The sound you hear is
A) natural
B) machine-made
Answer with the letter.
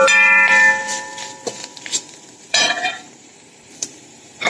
B